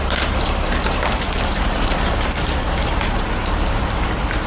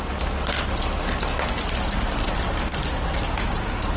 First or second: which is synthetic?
first